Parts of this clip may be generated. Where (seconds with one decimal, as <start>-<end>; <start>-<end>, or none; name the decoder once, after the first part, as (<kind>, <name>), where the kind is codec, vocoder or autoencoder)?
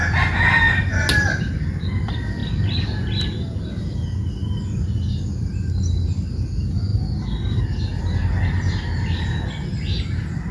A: none